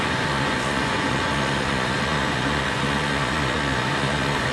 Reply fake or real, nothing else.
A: fake